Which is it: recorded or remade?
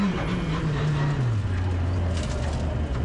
recorded